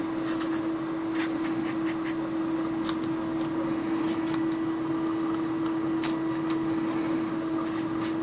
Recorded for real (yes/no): yes